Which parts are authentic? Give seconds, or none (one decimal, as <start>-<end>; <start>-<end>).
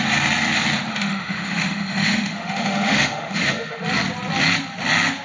0.0-0.9; 3.8-5.2